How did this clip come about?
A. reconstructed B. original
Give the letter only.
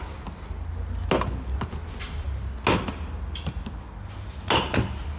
B